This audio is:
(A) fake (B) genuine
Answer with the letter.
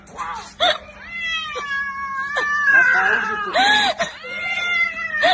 B